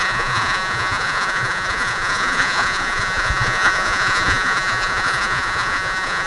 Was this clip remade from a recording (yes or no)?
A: yes